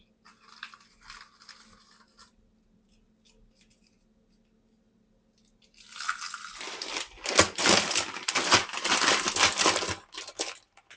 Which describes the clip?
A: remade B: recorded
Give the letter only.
B